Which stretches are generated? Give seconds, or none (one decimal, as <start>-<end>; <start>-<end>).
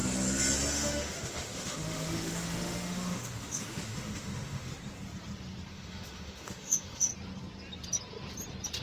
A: 0.7-4.7; 5.7-7.1